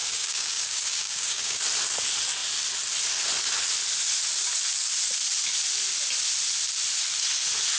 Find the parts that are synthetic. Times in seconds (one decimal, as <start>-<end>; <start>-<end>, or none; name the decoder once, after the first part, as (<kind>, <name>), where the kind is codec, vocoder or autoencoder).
0.0-1.6 (codec, DAC)